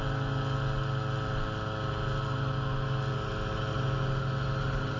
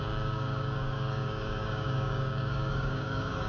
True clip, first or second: first